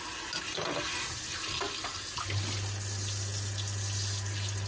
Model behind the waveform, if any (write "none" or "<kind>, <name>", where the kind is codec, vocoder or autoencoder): none